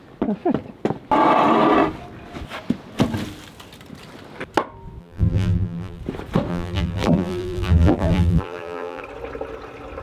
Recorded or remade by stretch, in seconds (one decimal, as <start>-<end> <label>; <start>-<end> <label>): 0.0-5.0 recorded; 5.0-6.0 remade; 6.0-6.5 recorded; 6.5-9.0 remade; 9.0-10.0 recorded